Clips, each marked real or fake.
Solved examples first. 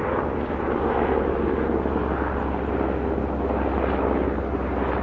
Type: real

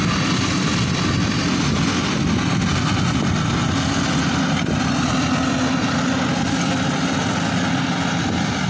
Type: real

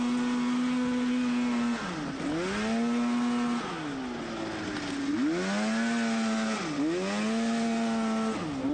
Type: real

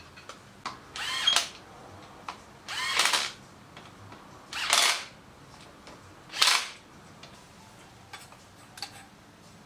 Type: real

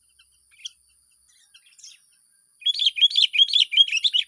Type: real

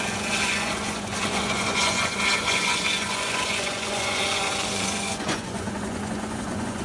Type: fake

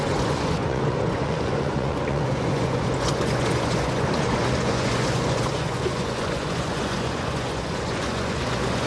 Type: fake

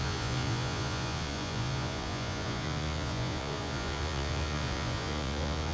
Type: fake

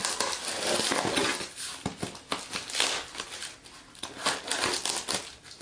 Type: real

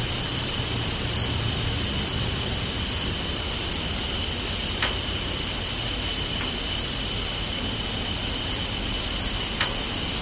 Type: real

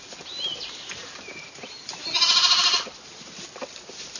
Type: real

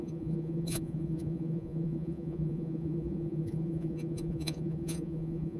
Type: fake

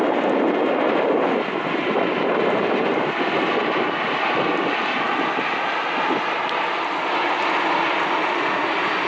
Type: real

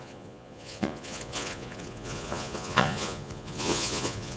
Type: fake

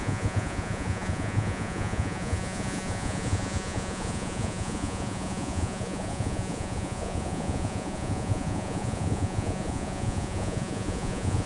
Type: fake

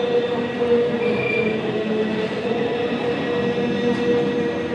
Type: real